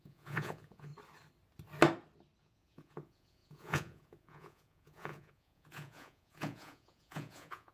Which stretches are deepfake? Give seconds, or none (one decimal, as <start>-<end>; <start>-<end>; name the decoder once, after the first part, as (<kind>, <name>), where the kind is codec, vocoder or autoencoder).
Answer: 0.0-0.9 (vocoder, Vocos); 2.4-7.7